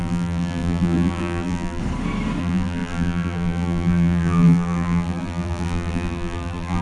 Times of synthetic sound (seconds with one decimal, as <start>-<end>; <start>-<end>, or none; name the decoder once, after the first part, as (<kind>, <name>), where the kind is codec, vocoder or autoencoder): 0.0-1.8 (vocoder, BigVGAN v2); 2.4-6.8